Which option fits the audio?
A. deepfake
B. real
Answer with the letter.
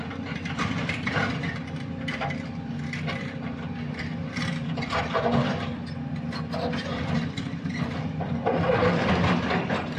A